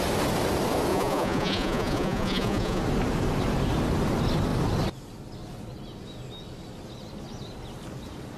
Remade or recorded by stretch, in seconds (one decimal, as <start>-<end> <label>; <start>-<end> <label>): 0.0-0.9 recorded; 0.9-2.8 remade; 2.8-8.4 recorded